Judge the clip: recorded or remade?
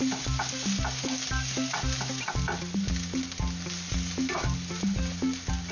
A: recorded